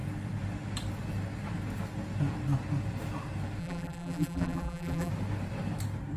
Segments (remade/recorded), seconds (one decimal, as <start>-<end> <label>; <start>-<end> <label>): 0.0-3.6 recorded; 3.6-5.1 remade; 5.1-6.2 recorded